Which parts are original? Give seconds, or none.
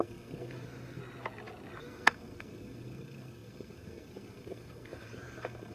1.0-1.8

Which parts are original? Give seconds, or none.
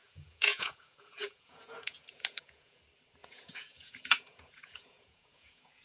2.8-3.2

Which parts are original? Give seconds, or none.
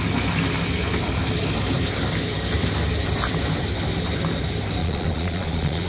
0.0-4.8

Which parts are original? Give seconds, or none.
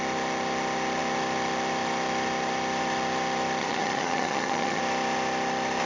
0.0-3.6; 4.8-5.9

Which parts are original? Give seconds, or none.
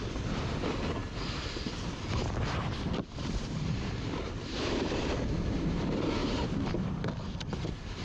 0.0-1.0; 5.8-6.2; 7.0-8.0